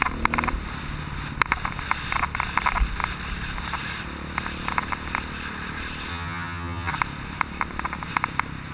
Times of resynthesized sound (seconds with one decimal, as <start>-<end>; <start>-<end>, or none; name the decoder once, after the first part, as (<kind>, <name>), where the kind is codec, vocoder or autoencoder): 6.1-6.9 (vocoder, HiFi-GAN)